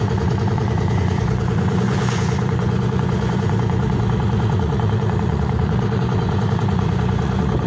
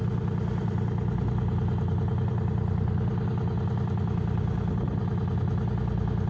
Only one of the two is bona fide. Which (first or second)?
second